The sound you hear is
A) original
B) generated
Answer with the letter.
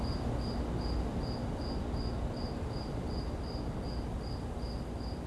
A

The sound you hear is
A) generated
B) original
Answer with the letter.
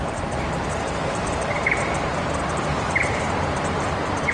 A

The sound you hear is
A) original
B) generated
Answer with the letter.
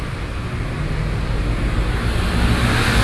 A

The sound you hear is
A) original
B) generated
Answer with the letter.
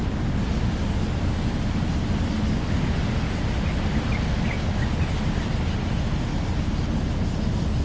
A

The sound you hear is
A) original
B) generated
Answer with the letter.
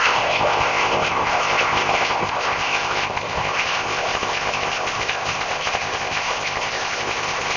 B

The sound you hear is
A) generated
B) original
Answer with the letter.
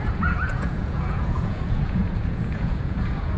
A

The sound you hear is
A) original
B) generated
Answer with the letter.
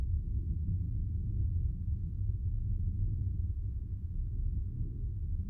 B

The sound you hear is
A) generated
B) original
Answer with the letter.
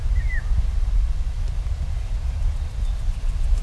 A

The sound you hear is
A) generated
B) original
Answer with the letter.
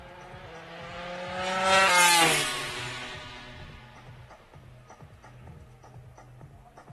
B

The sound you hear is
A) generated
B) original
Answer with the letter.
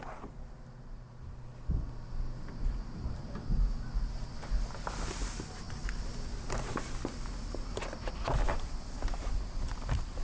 B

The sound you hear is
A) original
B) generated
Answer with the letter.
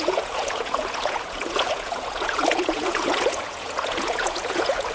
B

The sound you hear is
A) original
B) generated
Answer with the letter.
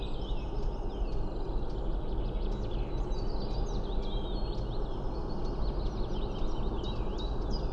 A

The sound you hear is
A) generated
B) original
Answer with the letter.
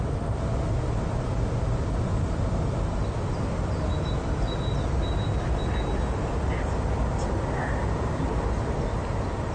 B